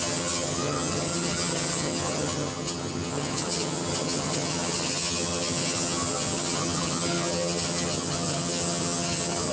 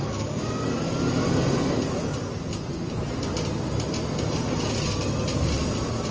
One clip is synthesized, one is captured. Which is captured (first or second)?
second